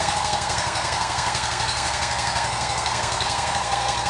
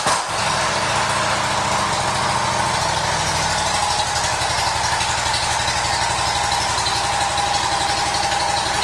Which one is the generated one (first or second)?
first